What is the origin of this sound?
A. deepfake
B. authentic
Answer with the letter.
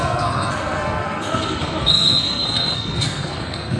A